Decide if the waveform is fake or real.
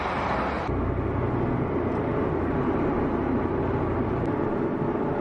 real